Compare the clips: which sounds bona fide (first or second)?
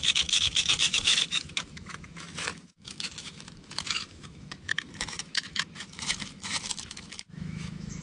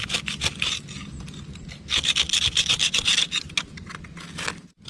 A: second